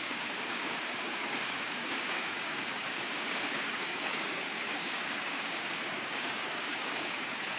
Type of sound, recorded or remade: remade